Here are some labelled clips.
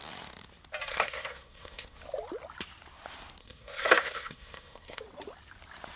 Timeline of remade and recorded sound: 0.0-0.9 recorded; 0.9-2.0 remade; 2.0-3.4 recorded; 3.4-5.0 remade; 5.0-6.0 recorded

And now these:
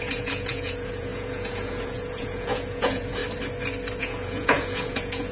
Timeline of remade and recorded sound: 0.0-3.2 remade; 3.2-4.0 recorded; 4.0-5.3 remade